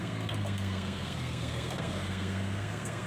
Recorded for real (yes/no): no